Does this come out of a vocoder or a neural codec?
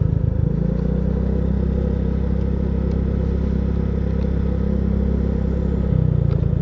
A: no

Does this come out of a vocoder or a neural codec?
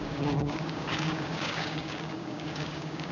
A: yes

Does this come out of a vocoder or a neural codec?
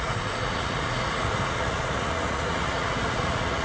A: yes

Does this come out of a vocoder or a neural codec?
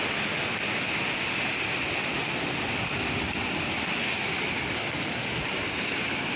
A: no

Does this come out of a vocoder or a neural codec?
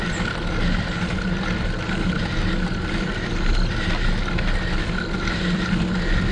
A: no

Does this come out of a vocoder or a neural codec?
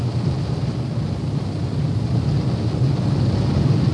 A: no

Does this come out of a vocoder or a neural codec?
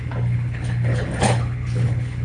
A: yes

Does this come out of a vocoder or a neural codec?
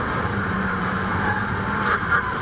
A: yes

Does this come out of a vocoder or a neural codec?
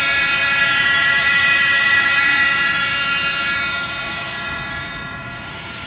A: yes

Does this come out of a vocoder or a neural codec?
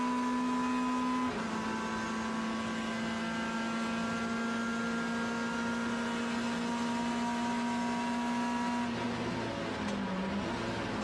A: no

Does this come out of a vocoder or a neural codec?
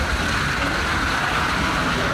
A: no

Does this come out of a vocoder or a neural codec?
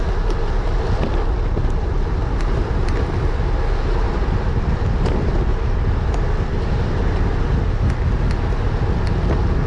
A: no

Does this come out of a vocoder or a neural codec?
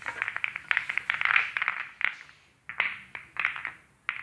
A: no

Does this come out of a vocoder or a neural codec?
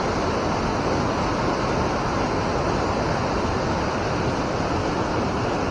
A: no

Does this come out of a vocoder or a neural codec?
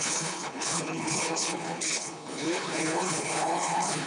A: yes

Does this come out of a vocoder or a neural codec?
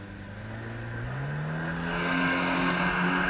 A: no